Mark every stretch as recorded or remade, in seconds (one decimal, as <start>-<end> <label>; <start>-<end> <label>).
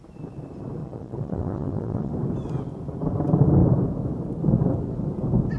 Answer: 0.0-0.8 recorded; 0.8-2.1 remade; 2.1-5.6 recorded